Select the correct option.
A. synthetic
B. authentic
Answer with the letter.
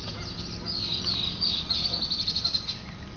B